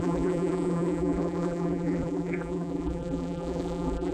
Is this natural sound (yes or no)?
no